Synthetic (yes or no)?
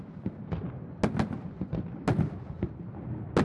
no